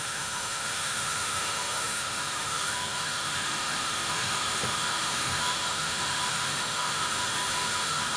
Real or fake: fake